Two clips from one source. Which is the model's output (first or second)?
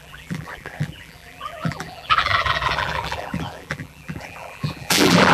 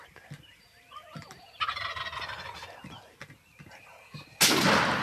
first